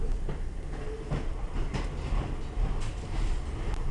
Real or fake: real